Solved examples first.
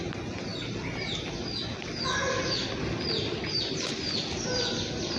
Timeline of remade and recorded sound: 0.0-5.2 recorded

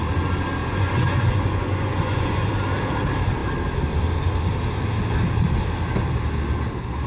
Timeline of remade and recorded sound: 0.0-0.6 recorded; 0.6-2.5 remade; 2.5-7.1 recorded

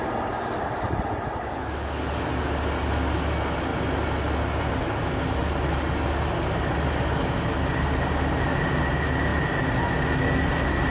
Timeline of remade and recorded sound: 0.0-10.9 recorded

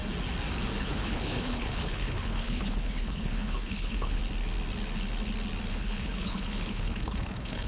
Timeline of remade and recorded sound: 0.0-0.8 recorded; 0.8-4.2 remade; 4.2-5.7 recorded; 5.7-7.7 remade

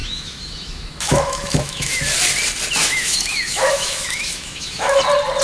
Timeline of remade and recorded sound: 0.0-2.0 remade; 2.0-2.8 recorded; 2.8-5.0 remade; 5.0-5.4 recorded

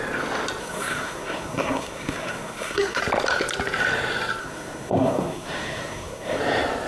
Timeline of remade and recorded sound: 0.0-0.6 recorded; 0.6-3.0 remade; 3.0-4.4 recorded; 4.4-6.4 remade; 6.4-6.9 recorded

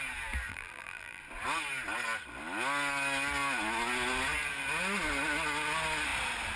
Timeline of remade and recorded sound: 0.0-0.5 recorded; 0.5-1.2 remade; 1.2-6.6 recorded